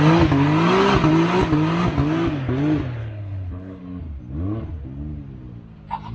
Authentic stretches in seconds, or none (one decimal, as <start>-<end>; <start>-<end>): 0.0-3.0; 3.8-6.1